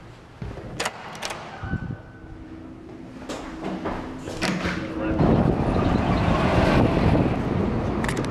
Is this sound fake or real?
real